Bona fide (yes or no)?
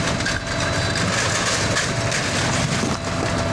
yes